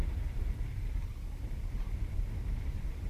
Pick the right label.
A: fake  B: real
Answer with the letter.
A